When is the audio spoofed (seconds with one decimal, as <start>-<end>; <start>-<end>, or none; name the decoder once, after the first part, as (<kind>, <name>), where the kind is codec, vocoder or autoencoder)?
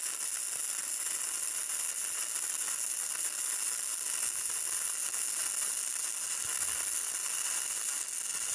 none